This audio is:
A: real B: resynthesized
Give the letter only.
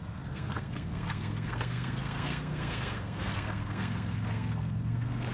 B